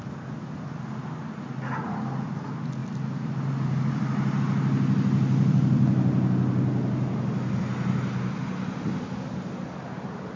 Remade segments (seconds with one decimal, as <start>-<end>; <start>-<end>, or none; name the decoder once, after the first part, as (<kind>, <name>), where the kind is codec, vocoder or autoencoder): none